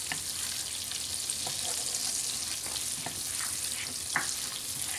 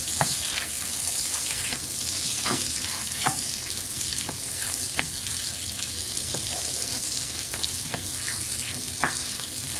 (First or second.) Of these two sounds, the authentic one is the first